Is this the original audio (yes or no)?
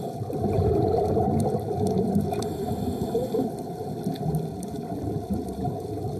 no